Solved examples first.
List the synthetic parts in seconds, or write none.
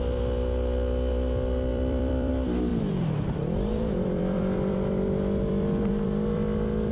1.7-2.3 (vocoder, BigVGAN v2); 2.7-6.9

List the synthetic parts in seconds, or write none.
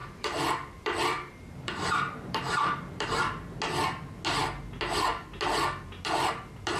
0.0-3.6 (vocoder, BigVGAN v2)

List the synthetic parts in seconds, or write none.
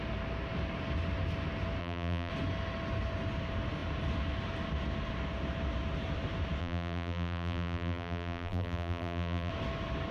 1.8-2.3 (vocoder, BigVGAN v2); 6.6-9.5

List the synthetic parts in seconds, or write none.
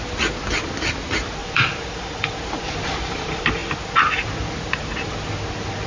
1.4-2.4 (vocoder, BigVGAN v2)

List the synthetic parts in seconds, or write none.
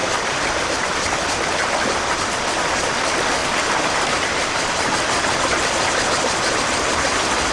0.0-1.2 (vocoder, BigVGAN v2); 3.4-7.5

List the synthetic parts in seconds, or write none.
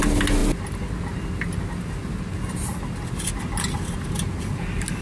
none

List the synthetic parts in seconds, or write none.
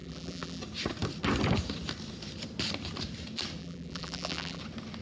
0.0-0.6 (vocoder, BigVGAN v2); 3.6-4.6